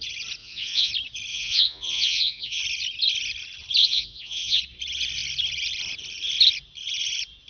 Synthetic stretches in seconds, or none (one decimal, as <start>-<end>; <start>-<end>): 0.4-0.9; 1.3-2.6; 3.8-4.6